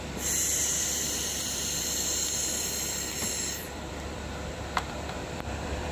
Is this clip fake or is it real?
fake